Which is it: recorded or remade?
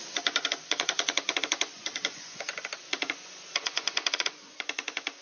remade